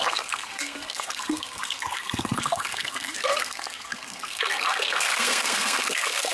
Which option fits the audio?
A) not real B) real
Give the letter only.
A